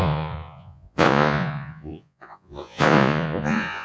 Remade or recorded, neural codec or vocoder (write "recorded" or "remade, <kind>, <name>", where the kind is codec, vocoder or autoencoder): remade, vocoder, Vocos